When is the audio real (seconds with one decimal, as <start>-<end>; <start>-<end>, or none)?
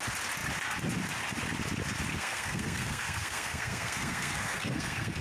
0.0-2.1